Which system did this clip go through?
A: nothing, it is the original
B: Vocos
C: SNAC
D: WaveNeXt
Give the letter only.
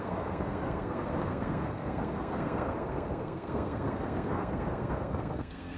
C